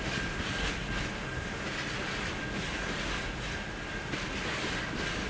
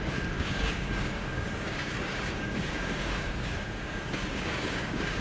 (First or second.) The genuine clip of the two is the first